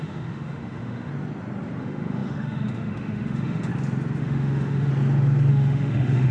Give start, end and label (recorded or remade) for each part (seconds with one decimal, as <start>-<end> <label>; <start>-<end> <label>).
0.0-1.1 remade; 1.1-1.8 recorded; 1.8-3.7 remade; 3.7-4.2 recorded; 4.2-4.9 remade; 4.9-5.5 recorded; 5.5-6.3 remade